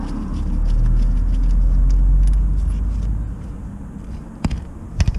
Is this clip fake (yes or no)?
no